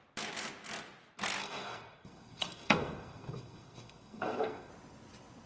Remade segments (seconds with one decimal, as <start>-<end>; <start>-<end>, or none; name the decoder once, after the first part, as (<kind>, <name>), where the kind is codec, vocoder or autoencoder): 1.4-4.7 (codec, SNAC)

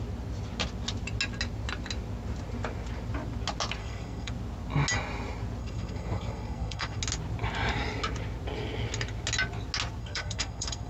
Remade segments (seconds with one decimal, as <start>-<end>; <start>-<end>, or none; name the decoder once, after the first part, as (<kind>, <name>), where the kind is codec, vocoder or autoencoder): 3.8-4.3 (codec, SNAC); 5.6-7.0; 10.0-10.9